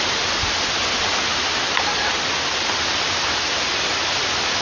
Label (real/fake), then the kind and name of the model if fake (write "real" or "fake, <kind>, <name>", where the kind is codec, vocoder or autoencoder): real